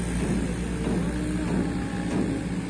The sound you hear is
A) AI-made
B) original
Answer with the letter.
B